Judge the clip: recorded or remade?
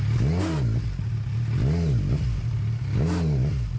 recorded